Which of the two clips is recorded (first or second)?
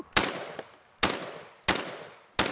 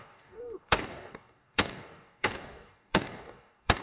first